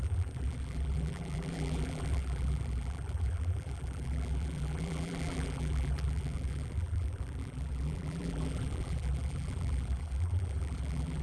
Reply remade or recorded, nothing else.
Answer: remade